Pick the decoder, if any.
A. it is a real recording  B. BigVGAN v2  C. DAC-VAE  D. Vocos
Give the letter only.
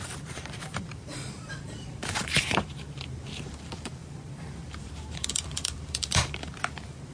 B